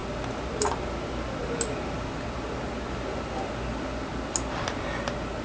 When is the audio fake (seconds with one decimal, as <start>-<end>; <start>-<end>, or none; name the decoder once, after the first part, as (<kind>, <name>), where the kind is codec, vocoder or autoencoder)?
none